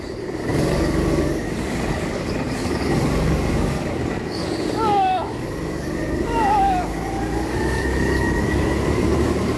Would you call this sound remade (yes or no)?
yes